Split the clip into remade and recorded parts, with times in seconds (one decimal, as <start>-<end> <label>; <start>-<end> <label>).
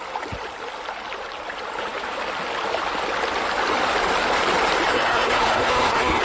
0.0-4.9 recorded; 4.9-6.2 remade